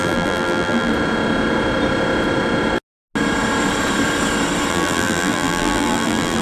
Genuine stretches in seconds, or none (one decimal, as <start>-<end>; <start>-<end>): 0.9-4.7